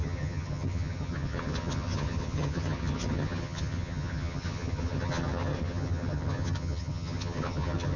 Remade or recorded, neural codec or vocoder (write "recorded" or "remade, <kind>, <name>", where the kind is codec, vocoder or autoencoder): remade, vocoder, HiFi-GAN